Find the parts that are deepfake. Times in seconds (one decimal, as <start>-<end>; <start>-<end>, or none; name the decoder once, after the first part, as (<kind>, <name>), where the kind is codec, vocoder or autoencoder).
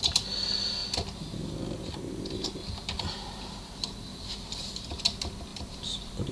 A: 4.1-5.0 (vocoder, BigVGAN v2); 5.5-6.3